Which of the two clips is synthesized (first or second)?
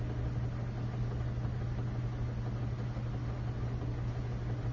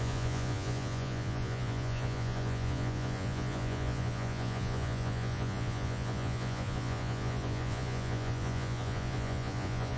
second